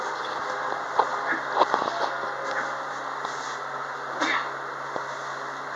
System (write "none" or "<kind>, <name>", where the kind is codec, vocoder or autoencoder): none